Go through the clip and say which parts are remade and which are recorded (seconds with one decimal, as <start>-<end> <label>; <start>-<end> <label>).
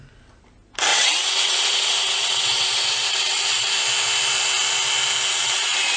0.0-0.9 recorded; 0.9-3.7 remade; 3.7-5.3 recorded; 5.3-6.0 remade